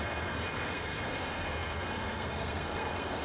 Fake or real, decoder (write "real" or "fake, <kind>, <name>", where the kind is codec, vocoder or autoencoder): fake, codec, SNAC